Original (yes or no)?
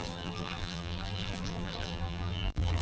no